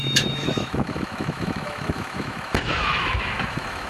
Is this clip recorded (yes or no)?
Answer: no